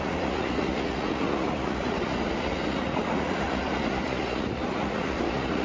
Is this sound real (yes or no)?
no